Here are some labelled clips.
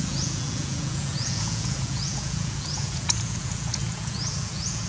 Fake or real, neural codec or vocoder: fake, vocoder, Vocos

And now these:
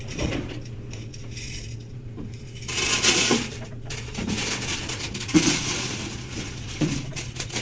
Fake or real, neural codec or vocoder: fake, vocoder, Vocos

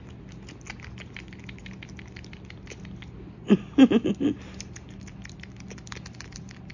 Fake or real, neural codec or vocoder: real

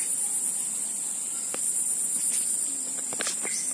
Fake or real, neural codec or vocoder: real